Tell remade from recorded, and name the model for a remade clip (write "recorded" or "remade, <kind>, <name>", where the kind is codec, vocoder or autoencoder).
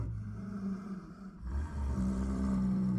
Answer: remade, vocoder, BigVGAN v2